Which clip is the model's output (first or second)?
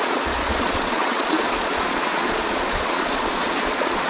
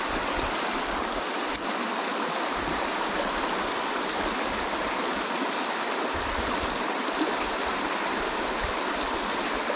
first